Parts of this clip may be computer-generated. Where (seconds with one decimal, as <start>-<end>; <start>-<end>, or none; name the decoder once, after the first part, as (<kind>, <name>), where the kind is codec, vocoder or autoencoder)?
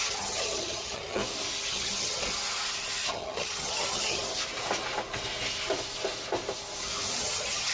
0.0-1.2 (vocoder, HiFi-GAN); 1.7-2.2; 3.1-4.2; 7.2-7.7